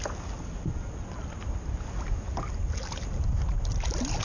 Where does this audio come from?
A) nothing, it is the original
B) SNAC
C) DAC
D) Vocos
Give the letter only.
A